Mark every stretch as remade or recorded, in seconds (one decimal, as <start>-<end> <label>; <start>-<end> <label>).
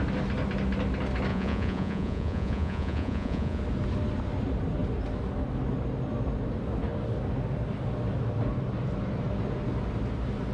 0.0-1.3 recorded; 1.3-3.6 remade; 3.6-10.5 recorded